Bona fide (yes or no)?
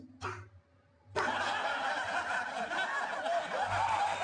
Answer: yes